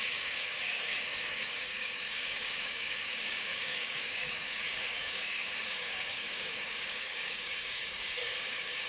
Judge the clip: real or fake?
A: fake